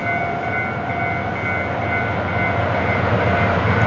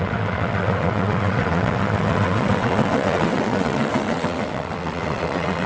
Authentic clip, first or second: first